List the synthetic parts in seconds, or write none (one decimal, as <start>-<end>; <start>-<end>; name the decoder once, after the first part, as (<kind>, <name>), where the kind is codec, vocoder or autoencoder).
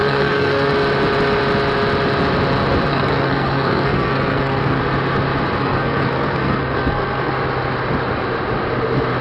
0.0-0.7 (codec, SNAC); 2.9-4.8; 5.6-7.3